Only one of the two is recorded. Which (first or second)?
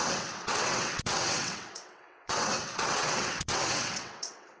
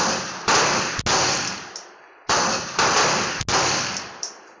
second